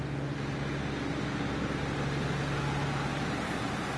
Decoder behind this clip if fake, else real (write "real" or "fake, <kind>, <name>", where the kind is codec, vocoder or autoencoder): real